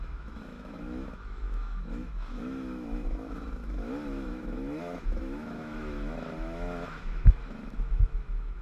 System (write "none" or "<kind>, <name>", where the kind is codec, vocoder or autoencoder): autoencoder, DAC-VAE